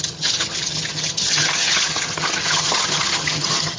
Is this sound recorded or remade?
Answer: remade